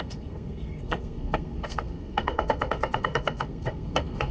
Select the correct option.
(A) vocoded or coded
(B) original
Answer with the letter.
A